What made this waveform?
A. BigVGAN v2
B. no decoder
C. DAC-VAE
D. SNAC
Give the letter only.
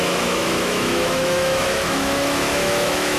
C